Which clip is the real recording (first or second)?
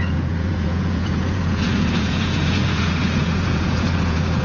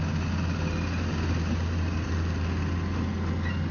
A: second